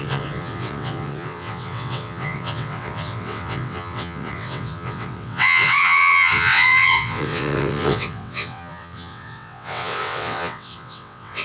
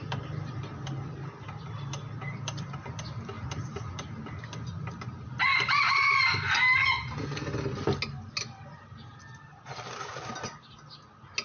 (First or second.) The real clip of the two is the second